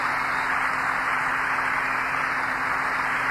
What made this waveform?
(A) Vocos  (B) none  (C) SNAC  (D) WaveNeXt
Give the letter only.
B